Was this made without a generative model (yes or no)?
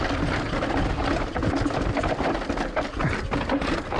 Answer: yes